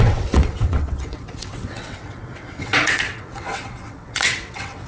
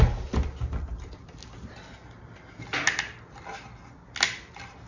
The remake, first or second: first